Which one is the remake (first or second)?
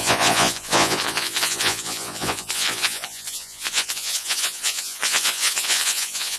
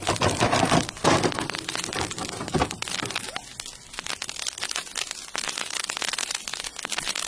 first